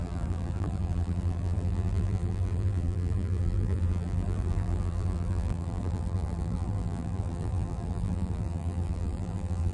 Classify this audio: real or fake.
fake